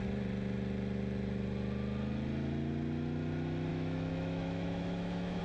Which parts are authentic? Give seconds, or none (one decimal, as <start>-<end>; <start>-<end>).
0.0-3.7